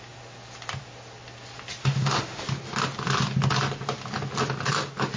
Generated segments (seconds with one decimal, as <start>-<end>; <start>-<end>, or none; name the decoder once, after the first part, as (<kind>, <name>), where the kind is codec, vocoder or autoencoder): 1.8-2.4 (autoencoder, DAC-VAE)